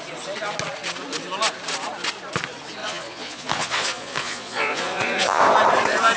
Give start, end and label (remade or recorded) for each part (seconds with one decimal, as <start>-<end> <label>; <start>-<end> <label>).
0.0-2.8 recorded; 2.8-5.4 remade; 5.4-6.2 recorded